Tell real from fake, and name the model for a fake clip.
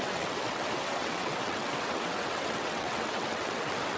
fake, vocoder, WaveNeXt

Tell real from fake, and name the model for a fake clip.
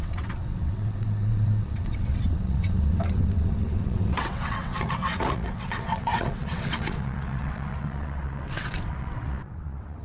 fake, vocoder, WaveNeXt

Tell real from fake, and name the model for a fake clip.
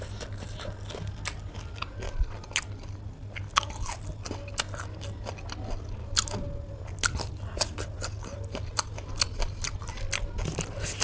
real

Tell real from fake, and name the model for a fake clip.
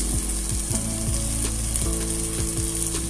real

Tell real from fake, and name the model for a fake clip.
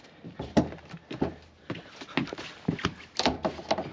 real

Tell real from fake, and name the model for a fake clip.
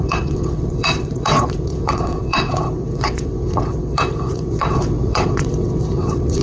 fake, vocoder, WaveNeXt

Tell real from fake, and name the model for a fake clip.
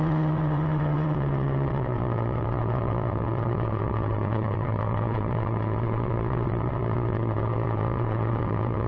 fake, vocoder, WaveNeXt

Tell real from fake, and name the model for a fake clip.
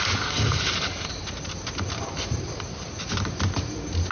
real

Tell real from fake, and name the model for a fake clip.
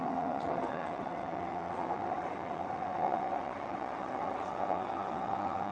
fake, vocoder, WaveNeXt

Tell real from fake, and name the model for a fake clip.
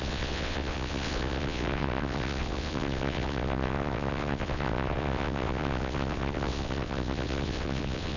fake, vocoder, WaveNeXt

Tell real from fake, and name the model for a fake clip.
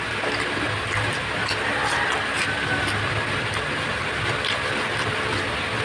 real